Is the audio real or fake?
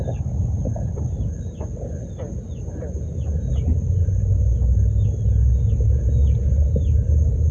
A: real